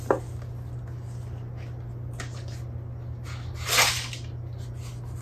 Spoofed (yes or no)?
no